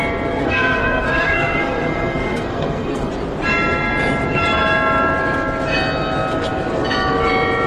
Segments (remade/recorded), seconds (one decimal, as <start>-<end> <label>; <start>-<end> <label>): 0.0-0.4 recorded; 0.4-3.1 remade; 3.1-7.7 recorded